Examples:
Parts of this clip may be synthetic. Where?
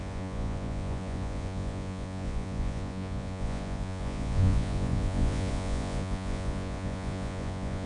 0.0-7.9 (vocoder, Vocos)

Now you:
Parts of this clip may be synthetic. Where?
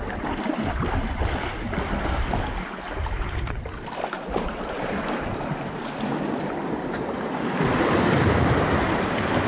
none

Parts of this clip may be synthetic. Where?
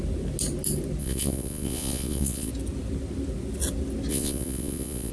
1.0-2.5 (vocoder, Vocos); 4.1-5.1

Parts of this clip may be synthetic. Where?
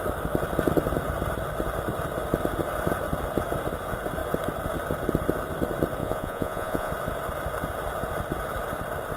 6.0-6.9 (vocoder, Vocos)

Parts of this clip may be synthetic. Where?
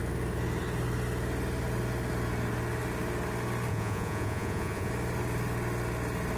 3.7-4.9 (vocoder, Vocos)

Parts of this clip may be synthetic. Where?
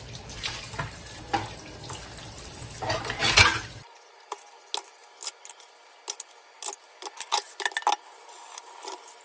none